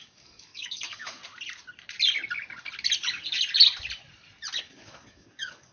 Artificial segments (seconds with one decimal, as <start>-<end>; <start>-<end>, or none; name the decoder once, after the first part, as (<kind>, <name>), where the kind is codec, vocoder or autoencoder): 0.0-1.2 (codec, DAC); 4.6-5.7